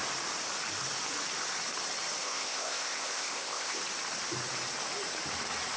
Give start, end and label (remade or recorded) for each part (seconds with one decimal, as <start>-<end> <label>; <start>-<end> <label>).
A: 0.0-2.2 recorded; 2.2-3.8 remade; 3.8-5.8 recorded